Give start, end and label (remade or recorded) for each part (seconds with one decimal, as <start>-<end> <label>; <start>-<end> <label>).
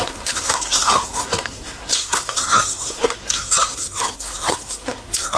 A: 0.0-5.4 remade